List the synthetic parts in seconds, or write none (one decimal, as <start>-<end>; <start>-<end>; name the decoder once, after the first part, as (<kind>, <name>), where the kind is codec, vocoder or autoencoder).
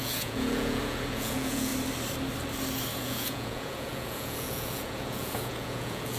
0.0-1.7 (vocoder, Vocos); 2.9-6.2